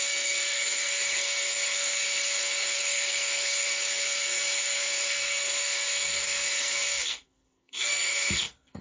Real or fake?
fake